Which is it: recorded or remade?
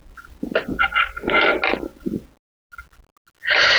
recorded